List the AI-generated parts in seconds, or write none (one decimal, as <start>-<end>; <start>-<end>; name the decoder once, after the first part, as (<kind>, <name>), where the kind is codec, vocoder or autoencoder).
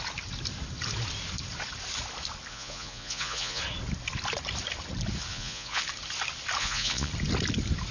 2.5-3.6 (vocoder, Vocos); 5.3-5.8; 6.6-7.1